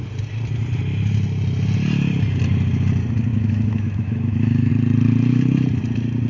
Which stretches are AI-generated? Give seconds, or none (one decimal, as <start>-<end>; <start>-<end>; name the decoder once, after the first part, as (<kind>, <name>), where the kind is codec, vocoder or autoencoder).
3.3-4.7 (autoencoder, DAC-VAE)